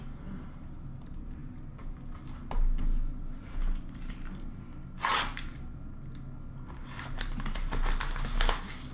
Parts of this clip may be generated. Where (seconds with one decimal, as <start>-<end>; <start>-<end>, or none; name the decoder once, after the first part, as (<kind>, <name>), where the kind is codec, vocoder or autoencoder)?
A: none